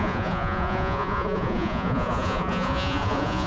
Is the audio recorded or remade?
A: remade